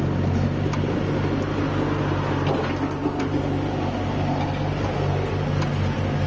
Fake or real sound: real